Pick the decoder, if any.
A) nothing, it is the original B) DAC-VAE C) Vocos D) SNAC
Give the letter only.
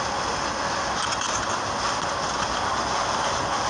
A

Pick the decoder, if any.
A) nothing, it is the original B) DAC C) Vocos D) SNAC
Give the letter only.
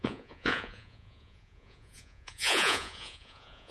C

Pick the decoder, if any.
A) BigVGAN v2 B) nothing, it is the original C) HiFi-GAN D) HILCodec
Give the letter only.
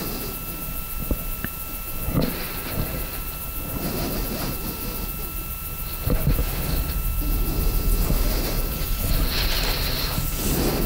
B